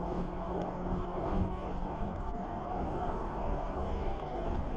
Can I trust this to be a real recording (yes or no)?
no